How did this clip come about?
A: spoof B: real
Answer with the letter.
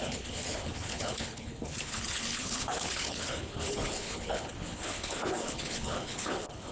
A